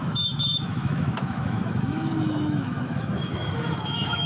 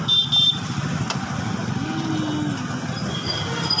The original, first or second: second